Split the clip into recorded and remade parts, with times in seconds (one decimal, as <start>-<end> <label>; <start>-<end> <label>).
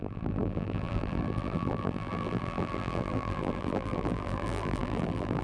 0.0-5.4 remade